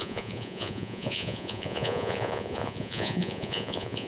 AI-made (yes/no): yes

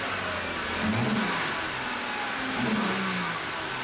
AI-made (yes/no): no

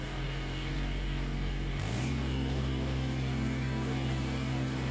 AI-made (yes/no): yes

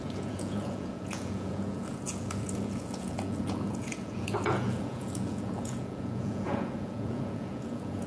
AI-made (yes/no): yes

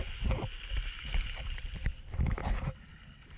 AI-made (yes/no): no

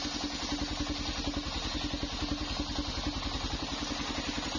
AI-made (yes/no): no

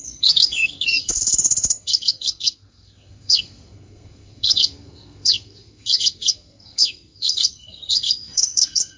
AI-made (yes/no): yes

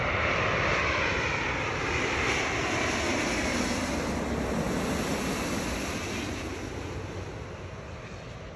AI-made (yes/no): no